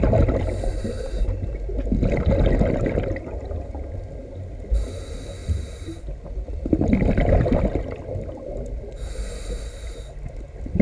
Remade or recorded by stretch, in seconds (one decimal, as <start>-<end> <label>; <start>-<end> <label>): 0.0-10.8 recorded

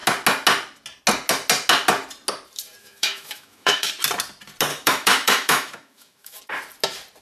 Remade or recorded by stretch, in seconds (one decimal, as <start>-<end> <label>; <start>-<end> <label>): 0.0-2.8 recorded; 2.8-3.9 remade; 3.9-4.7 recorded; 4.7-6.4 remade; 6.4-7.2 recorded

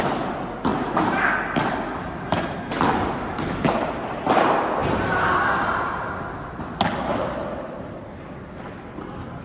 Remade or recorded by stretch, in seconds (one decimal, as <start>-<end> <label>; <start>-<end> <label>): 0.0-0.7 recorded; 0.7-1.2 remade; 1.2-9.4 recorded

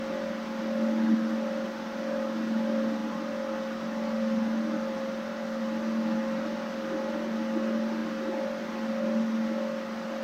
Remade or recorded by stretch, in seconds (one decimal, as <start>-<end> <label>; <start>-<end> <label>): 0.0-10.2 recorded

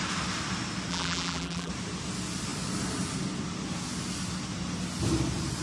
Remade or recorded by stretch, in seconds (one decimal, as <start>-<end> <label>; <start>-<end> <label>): 0.0-0.9 recorded; 0.9-1.7 remade; 1.7-5.6 recorded

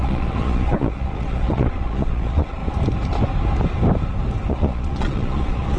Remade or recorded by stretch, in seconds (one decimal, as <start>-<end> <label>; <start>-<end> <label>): 0.0-2.6 remade; 2.6-4.5 recorded; 4.5-5.8 remade

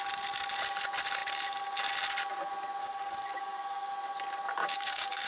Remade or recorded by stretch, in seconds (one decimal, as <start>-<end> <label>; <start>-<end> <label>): 0.0-2.8 recorded; 2.8-3.9 remade; 3.9-4.6 recorded; 4.6-5.3 remade